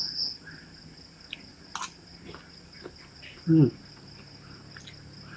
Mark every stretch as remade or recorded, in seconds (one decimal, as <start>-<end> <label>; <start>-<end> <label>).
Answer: 0.0-5.4 recorded